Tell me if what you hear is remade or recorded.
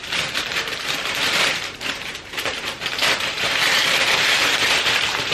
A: remade